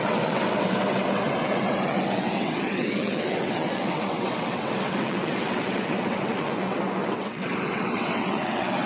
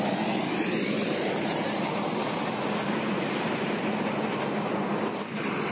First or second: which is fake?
first